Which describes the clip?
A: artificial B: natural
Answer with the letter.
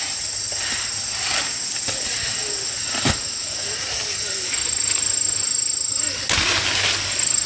B